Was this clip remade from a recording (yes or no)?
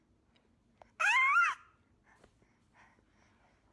no